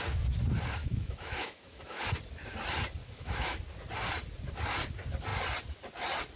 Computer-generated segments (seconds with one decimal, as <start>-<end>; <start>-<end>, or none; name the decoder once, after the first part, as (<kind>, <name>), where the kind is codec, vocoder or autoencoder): 0.8-2.0 (autoencoder, DAC-VAE); 3.0-3.6